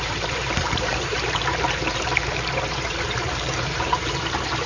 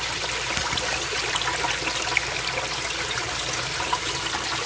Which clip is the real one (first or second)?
second